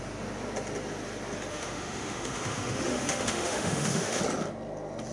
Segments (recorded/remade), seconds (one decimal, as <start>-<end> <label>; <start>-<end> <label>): 0.0-1.5 recorded; 1.5-4.2 remade; 4.2-5.1 recorded